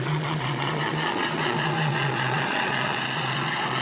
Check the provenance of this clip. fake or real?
fake